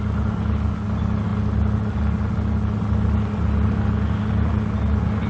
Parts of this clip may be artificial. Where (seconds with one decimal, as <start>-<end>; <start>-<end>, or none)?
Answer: none